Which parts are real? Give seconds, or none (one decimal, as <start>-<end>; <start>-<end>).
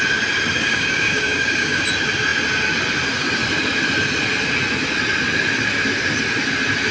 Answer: 0.0-0.6; 1.8-6.9